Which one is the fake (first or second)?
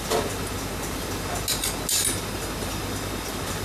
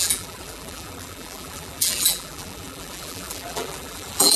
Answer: second